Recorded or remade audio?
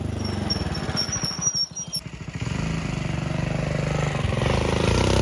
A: recorded